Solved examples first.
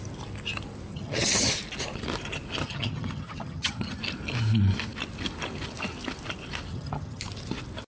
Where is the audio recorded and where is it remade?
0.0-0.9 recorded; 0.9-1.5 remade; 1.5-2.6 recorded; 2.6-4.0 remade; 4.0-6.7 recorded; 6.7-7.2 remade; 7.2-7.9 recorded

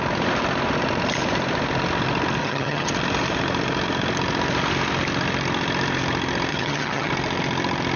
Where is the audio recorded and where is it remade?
0.0-2.4 recorded; 2.4-2.9 remade; 2.9-6.5 recorded; 6.5-7.1 remade; 7.1-8.0 recorded

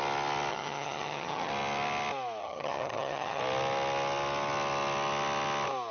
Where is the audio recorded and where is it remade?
0.0-0.5 recorded; 0.5-1.5 remade; 1.5-2.4 recorded; 2.4-3.4 remade; 3.4-5.9 recorded

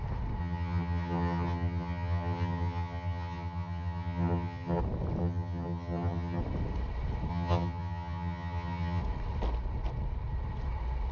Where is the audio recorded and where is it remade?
0.0-0.4 recorded; 0.4-4.8 remade; 4.8-5.2 recorded; 5.2-6.4 remade; 6.4-7.3 recorded; 7.3-9.0 remade; 9.0-11.1 recorded

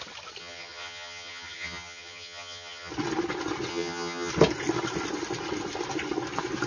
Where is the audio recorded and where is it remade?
0.0-0.4 recorded; 0.4-2.9 remade; 2.9-3.7 recorded; 3.7-4.3 remade; 4.3-6.7 recorded

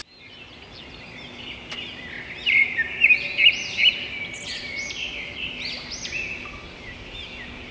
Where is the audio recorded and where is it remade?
0.0-7.7 recorded